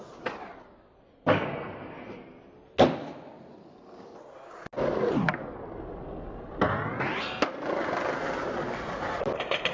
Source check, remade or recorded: recorded